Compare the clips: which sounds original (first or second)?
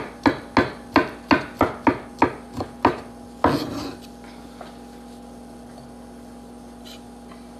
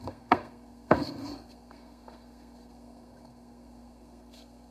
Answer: first